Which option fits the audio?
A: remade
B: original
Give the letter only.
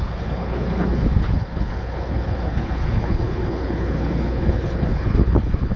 A